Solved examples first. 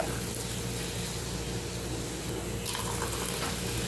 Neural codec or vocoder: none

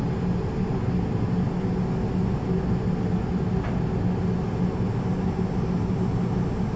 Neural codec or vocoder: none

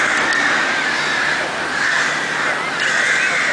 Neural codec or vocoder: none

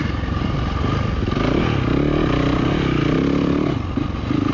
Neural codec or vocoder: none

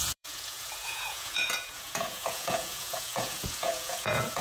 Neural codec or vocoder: vocoder, Vocos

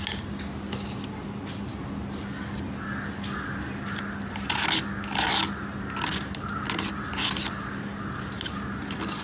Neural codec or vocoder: none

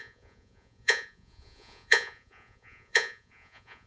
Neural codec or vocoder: vocoder, Vocos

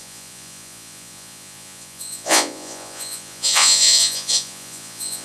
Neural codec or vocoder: vocoder, Vocos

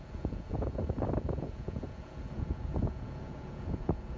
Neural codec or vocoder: vocoder, Vocos